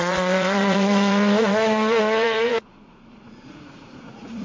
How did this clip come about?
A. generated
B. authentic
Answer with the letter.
A